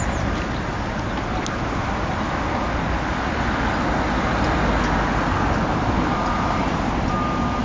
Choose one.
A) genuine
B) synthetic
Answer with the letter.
A